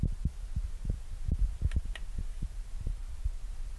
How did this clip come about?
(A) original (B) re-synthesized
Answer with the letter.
A